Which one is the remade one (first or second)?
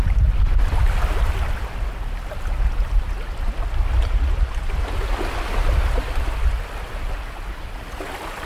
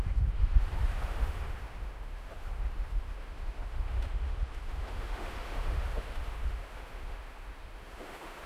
second